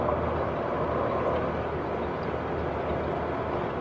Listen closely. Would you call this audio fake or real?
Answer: real